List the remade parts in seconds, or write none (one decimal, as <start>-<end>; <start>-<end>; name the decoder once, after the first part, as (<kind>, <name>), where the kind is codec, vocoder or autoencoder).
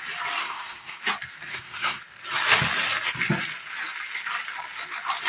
0.4-1.0 (codec, SNAC); 1.5-2.0